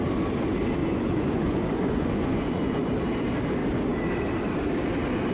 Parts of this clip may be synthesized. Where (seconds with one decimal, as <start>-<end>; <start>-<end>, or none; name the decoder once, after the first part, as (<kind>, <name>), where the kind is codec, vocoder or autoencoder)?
0.8-2.9 (vocoder, Vocos)